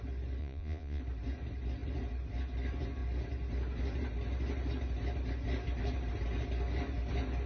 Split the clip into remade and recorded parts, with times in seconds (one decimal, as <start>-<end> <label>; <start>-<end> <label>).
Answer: 0.0-0.4 recorded; 0.4-1.0 remade; 1.0-7.5 recorded

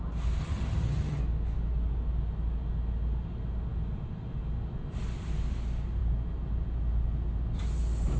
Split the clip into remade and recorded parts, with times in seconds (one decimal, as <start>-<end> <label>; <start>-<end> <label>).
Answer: 0.0-0.4 recorded; 0.4-1.2 remade; 1.2-8.2 recorded

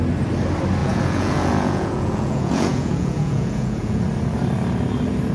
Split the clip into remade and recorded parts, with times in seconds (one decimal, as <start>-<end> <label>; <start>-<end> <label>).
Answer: 0.0-0.8 recorded; 0.8-4.0 remade; 4.0-5.3 recorded

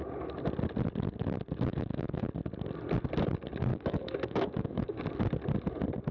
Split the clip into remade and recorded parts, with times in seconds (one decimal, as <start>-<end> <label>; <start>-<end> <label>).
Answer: 0.0-1.7 recorded; 1.7-2.2 remade; 2.2-3.7 recorded; 3.7-5.0 remade; 5.0-6.1 recorded

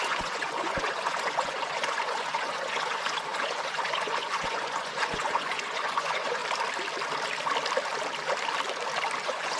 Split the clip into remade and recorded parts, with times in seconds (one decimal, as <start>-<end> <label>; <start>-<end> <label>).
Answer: 0.0-6.4 remade; 6.4-9.2 recorded; 9.2-9.6 remade

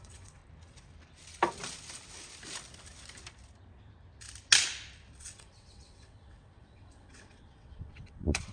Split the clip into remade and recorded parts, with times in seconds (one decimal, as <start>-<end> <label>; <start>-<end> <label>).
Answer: 0.0-0.4 remade; 0.4-5.2 recorded; 5.2-8.5 remade

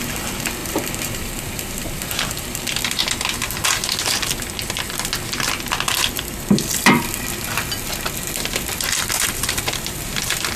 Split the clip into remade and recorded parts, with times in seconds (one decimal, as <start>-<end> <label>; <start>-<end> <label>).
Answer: 0.0-3.0 remade; 3.0-8.1 recorded; 8.1-10.6 remade

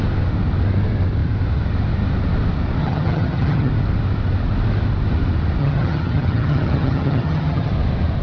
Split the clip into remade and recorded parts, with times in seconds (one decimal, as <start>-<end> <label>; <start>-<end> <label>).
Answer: 0.0-2.8 recorded; 2.8-3.7 remade; 3.7-5.6 recorded; 5.6-7.7 remade; 7.7-8.2 recorded